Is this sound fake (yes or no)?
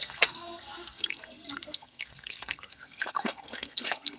yes